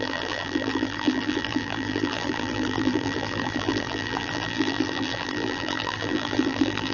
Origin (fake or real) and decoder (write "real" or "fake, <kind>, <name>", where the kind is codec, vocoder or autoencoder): fake, vocoder, BigVGAN v2